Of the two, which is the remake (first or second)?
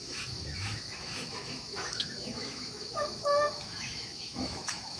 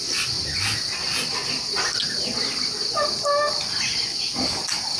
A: first